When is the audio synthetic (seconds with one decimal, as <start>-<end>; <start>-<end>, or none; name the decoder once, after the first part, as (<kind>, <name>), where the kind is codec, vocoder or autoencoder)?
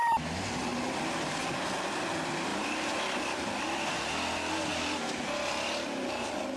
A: none